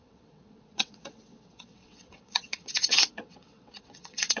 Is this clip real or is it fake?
fake